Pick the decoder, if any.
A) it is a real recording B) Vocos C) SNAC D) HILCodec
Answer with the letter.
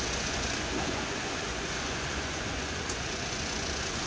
B